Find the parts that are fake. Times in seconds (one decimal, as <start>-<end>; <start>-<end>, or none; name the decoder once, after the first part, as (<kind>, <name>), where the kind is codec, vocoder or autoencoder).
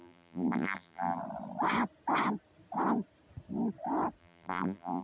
0.0-1.2 (vocoder, BigVGAN v2); 4.2-5.0